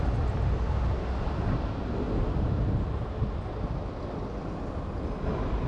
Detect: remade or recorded recorded